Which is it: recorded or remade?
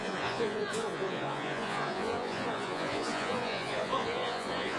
remade